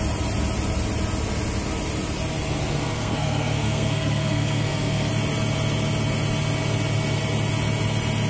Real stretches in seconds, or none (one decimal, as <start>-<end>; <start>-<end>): 0.0-2.9; 5.1-8.3